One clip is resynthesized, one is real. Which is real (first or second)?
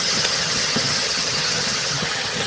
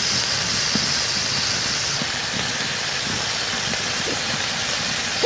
second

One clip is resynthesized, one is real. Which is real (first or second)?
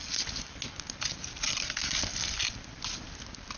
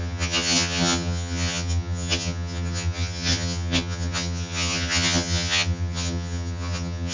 first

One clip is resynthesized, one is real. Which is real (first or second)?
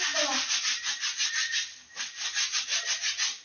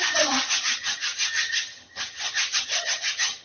first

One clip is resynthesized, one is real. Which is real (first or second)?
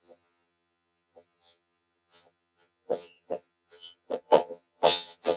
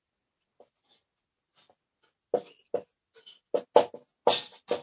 second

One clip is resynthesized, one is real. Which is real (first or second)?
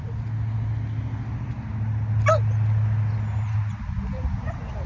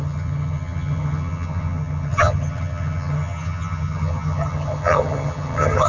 first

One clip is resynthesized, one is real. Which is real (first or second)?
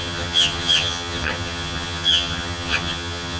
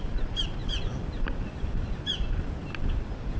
second